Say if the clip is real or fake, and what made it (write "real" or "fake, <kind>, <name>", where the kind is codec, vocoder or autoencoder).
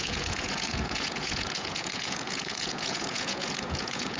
fake, vocoder, Vocos